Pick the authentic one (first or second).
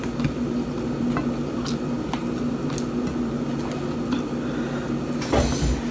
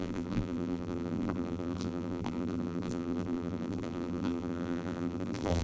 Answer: first